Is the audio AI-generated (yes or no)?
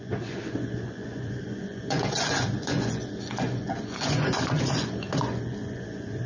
yes